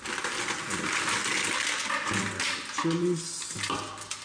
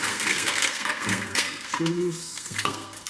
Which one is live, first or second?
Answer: first